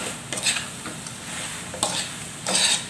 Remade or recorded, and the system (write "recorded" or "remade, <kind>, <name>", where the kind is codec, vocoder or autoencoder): recorded